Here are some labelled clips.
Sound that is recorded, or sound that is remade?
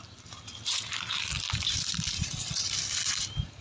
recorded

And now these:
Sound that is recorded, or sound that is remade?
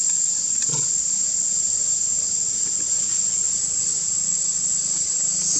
recorded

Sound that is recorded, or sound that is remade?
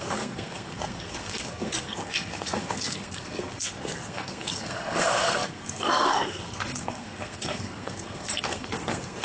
remade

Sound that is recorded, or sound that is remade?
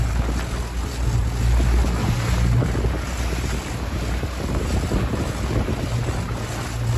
recorded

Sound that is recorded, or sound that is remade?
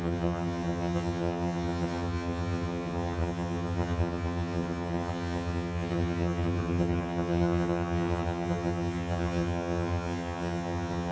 remade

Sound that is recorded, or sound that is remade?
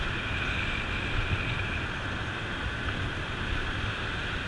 recorded